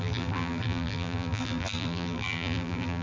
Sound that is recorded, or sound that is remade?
remade